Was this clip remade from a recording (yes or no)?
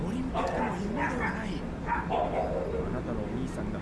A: no